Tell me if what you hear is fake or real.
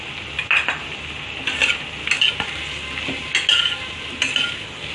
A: real